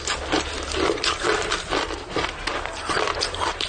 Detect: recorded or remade recorded